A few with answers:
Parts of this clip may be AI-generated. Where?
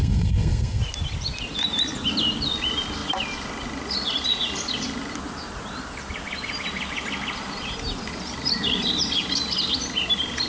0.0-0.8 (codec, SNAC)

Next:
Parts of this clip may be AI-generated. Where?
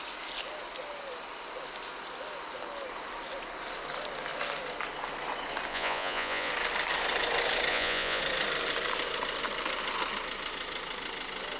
5.7-6.5 (vocoder, Vocos); 7.7-8.2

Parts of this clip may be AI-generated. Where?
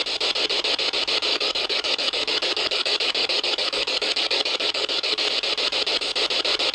1.3-5.3 (codec, DAC)